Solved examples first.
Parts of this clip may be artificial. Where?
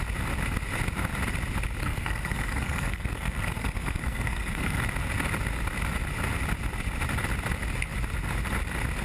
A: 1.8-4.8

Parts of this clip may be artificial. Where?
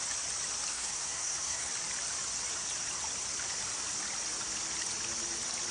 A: 0.7-1.7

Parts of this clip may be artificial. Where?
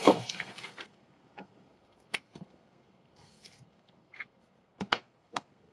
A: 0.0-5.7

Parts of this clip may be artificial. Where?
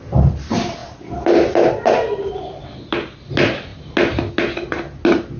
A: none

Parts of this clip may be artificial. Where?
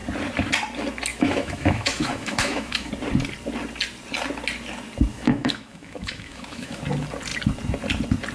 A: 1.1-2.9; 5.1-6.8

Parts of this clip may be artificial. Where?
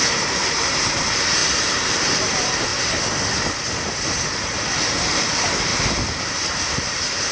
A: 0.0-2.7; 3.8-5.7; 6.7-7.3